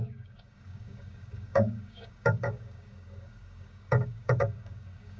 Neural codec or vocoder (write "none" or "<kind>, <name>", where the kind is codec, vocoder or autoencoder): codec, DAC